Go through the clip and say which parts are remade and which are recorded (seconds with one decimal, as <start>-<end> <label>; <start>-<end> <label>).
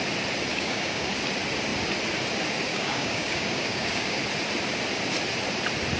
0.0-0.5 recorded; 0.5-1.1 remade; 1.1-2.7 recorded; 2.7-4.2 remade; 4.2-6.0 recorded